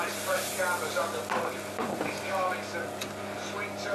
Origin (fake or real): real